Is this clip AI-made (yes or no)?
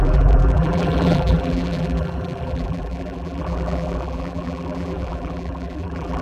yes